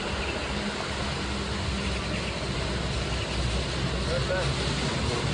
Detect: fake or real real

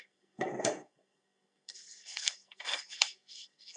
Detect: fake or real fake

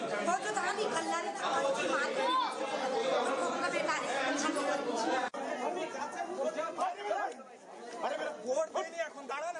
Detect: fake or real real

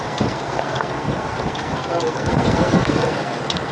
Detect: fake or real fake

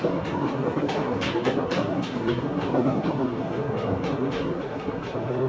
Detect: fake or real fake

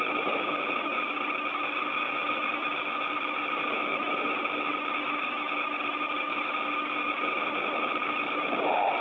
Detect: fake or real real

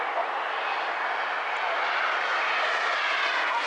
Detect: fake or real real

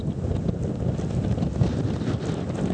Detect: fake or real real